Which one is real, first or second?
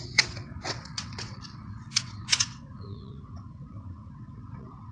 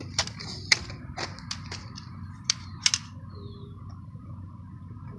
second